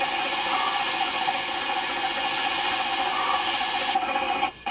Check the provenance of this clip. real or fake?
fake